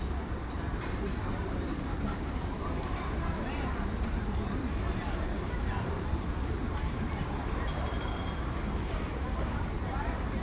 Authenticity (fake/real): fake